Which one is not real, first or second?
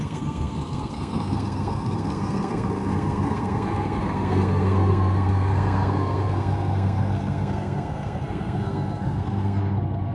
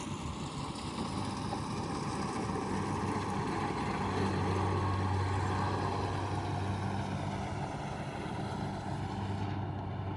first